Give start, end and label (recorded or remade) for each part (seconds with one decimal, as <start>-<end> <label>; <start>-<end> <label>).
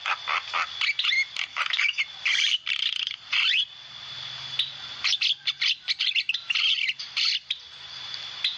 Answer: 0.0-1.5 recorded; 1.5-2.0 remade; 2.0-8.6 recorded